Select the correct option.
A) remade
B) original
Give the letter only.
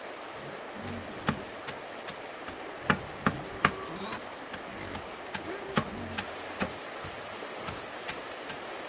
B